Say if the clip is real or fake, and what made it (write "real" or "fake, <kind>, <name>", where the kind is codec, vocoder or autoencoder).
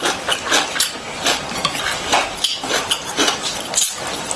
real